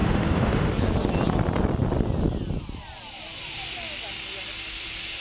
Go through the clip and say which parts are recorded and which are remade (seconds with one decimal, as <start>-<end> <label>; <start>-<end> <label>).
0.0-0.7 remade; 0.7-5.2 recorded